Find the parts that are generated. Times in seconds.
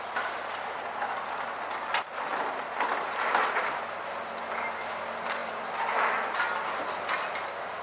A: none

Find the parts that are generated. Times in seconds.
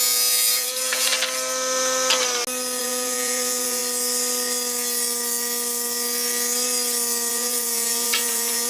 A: 0.0-1.1 (vocoder, Vocos); 2.8-3.8; 7.3-8.7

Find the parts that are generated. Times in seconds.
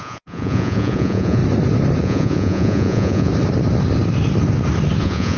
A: 0.0-1.4 (vocoder, Vocos); 2.0-3.3; 5.0-5.4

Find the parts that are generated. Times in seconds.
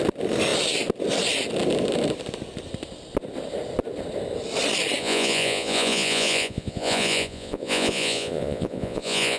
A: 5.0-9.4 (vocoder, Vocos)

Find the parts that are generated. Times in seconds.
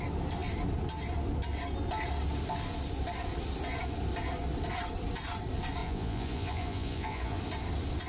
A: 5.8-7.4 (vocoder, Vocos)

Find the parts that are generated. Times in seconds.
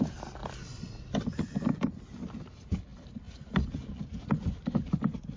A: none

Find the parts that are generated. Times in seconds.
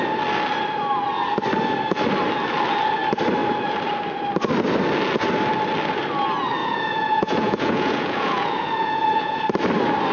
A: 6.6-9.4 (vocoder, Vocos)